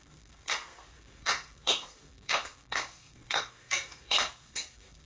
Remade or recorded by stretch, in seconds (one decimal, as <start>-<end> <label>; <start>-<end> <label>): 0.0-5.1 remade